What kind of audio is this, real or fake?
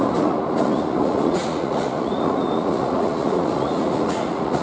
fake